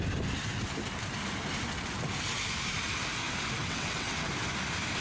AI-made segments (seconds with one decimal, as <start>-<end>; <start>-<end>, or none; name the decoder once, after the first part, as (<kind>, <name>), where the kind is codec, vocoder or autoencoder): 3.6-4.3 (vocoder, WaveNeXt)